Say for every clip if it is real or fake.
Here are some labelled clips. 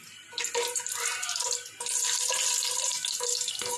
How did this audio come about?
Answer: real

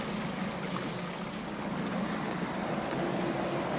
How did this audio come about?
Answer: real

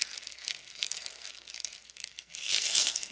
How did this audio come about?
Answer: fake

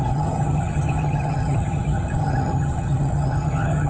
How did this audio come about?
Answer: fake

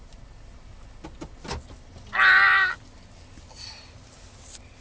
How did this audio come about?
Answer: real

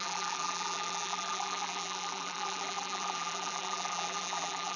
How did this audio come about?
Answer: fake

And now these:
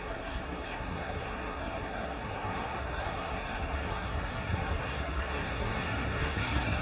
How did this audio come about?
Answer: fake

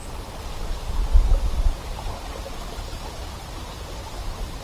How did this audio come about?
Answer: real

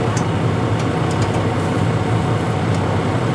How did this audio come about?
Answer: real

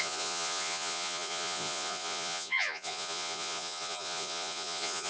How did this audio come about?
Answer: fake